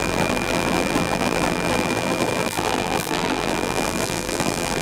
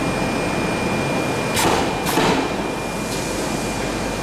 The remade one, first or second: first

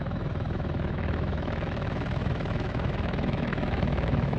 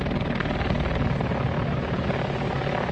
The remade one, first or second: first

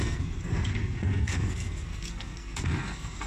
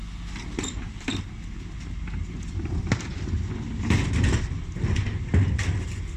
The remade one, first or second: first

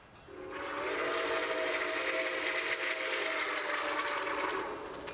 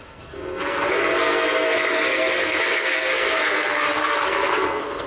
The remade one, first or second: second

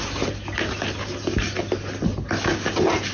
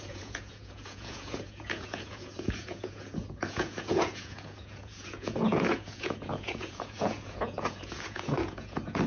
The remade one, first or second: second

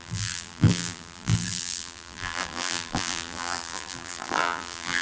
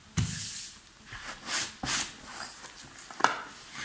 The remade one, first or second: first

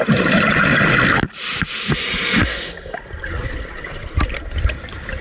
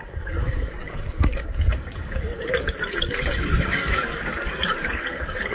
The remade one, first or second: second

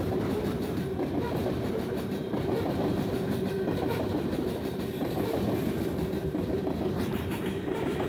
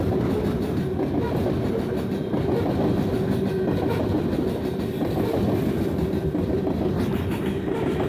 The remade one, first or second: first